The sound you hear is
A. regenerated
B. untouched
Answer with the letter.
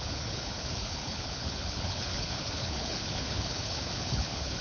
A